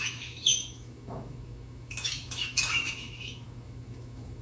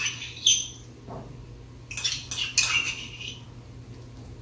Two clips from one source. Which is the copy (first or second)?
first